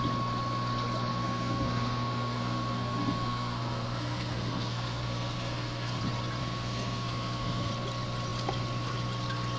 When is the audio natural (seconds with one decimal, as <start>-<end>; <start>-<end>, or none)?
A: 0.0-1.1; 6.0-6.4; 7.7-9.6